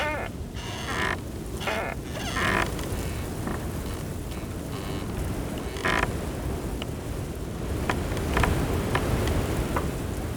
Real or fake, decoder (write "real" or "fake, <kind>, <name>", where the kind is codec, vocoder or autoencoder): real